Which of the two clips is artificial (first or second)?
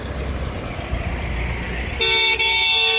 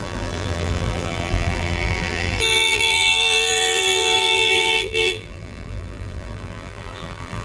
second